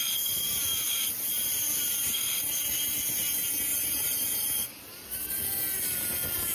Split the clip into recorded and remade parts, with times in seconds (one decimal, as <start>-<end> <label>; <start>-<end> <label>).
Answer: 0.0-0.5 recorded; 0.5-2.2 remade; 2.2-3.7 recorded; 3.7-5.3 remade; 5.3-6.5 recorded